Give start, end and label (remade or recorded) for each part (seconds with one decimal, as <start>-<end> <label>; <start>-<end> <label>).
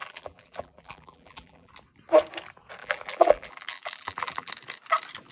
0.0-1.7 remade; 1.7-2.8 recorded; 2.8-4.5 remade; 4.5-5.3 recorded